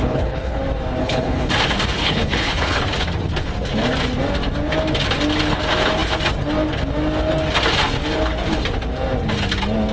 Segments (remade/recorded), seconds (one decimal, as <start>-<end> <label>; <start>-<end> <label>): 0.0-0.6 remade; 0.6-1.0 recorded; 1.0-1.5 remade; 1.5-2.0 recorded; 2.0-2.8 remade; 2.8-9.9 recorded